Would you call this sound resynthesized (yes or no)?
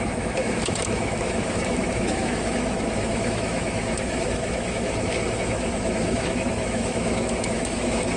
yes